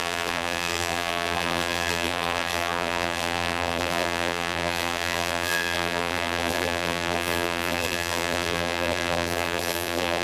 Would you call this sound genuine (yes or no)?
no